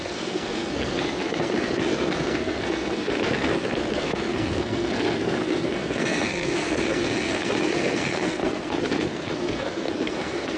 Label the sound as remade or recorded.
remade